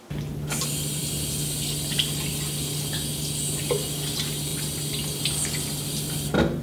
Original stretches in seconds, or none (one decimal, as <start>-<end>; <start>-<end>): 0.0-6.6